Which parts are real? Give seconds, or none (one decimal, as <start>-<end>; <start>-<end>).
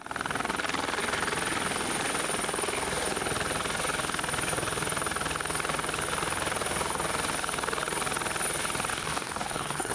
0.0-8.9